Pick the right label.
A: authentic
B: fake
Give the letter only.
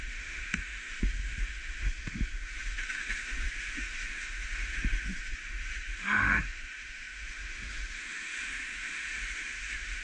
B